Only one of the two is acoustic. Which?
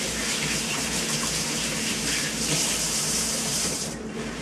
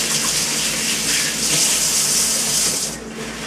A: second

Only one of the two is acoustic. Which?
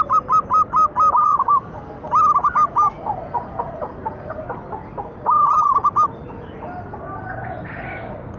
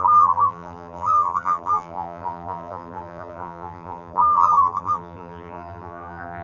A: first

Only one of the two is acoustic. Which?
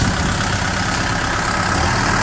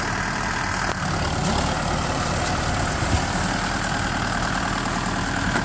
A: first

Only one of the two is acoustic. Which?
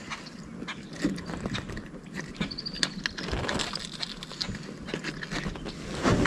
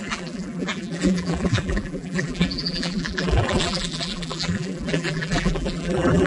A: first